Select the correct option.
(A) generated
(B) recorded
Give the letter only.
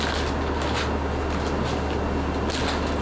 B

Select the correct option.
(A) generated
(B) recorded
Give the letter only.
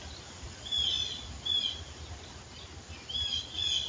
B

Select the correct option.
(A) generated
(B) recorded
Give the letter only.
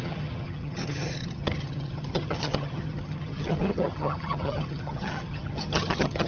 A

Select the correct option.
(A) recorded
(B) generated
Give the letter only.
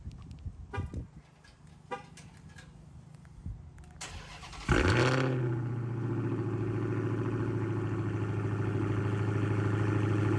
A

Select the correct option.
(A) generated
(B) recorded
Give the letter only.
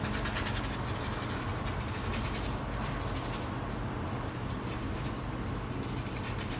B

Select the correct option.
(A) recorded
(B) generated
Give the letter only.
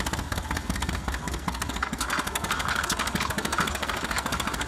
B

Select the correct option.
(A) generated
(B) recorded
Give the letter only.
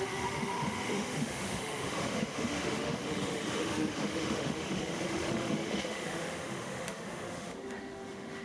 A